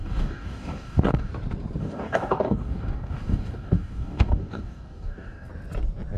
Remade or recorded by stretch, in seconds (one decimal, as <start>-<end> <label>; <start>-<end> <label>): 0.0-1.3 remade; 1.3-1.8 recorded; 1.8-5.5 remade; 5.5-6.2 recorded